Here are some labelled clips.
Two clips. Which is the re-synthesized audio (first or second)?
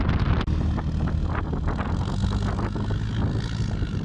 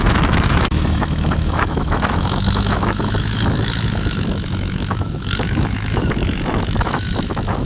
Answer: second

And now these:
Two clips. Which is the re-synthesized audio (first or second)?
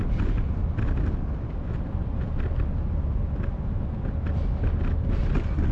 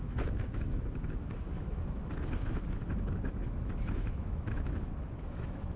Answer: second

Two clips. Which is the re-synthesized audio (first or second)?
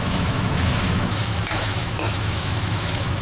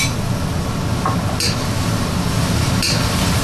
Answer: first